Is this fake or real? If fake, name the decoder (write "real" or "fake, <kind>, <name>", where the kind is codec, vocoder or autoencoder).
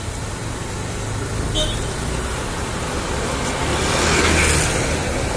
real